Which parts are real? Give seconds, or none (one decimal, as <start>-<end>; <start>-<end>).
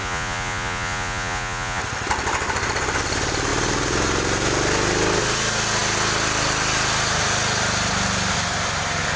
1.8-9.2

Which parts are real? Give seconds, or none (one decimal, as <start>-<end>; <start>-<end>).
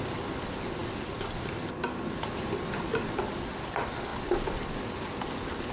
0.0-5.7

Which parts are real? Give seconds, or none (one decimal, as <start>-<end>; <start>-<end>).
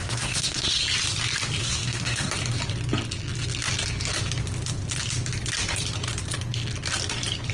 0.8-1.6; 2.3-7.5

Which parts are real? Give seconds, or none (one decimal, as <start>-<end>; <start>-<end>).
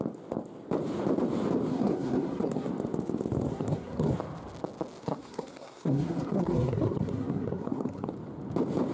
0.0-1.7; 2.7-3.5; 4.1-5.0; 8.1-8.9